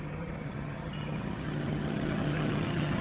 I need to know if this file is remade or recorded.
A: remade